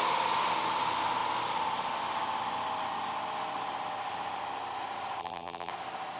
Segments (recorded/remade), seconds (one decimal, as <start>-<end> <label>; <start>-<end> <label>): 0.0-5.2 recorded; 5.2-5.7 remade; 5.7-6.2 recorded